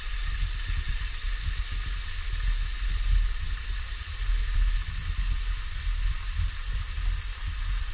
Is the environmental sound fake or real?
real